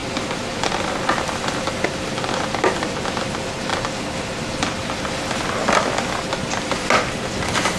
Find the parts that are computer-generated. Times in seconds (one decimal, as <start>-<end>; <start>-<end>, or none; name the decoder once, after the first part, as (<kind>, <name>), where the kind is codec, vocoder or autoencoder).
none

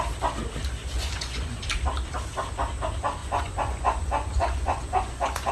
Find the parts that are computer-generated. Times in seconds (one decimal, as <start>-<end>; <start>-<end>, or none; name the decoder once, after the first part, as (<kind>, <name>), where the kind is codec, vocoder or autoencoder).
0.8-1.6 (vocoder, Vocos); 3.2-5.5

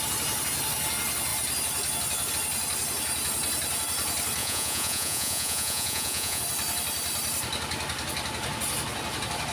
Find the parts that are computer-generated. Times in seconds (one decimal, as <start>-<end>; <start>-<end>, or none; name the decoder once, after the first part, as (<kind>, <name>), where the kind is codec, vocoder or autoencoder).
4.4-6.4 (vocoder, Vocos)

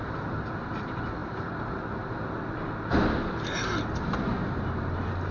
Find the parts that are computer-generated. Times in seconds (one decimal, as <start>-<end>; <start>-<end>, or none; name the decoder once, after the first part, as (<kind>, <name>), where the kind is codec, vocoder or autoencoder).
4.3-5.3 (vocoder, BigVGAN v2)

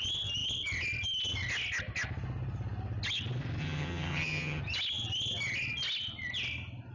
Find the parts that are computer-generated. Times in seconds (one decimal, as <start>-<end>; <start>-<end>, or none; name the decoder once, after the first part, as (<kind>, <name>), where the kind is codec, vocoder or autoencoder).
3.6-4.6 (vocoder, HiFi-GAN)

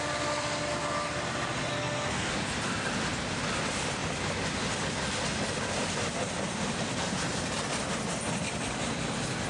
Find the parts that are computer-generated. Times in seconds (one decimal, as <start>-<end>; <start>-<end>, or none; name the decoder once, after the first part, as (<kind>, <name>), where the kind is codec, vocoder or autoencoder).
1.7-2.3 (codec, SNAC)

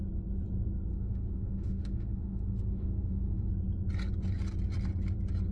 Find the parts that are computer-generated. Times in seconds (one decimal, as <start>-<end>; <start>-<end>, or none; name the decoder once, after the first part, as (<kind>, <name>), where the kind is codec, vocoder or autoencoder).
0.9-3.5 (autoencoder, DAC-VAE)

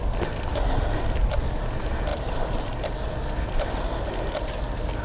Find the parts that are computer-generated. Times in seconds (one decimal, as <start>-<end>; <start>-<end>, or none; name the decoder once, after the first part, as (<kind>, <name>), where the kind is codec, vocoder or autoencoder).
none